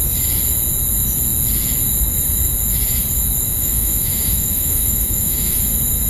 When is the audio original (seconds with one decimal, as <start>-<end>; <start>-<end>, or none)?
0.0-3.6; 5.6-6.1